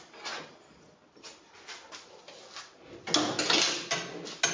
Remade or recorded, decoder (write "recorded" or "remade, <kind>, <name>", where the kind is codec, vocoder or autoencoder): recorded